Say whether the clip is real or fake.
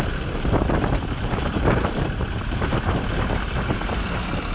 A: real